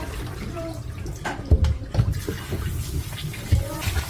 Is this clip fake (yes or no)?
no